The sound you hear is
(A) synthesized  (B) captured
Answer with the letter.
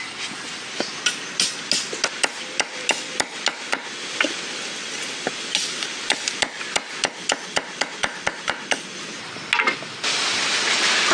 B